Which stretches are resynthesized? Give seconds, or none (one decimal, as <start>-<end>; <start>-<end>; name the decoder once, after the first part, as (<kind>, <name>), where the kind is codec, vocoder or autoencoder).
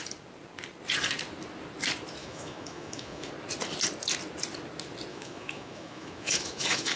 2.2-3.3 (autoencoder, DAC-VAE); 5.1-7.0